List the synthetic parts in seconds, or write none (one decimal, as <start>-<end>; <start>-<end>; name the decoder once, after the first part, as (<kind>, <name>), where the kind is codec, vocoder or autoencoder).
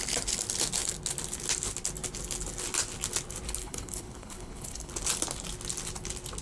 3.6-4.9 (codec, HILCodec)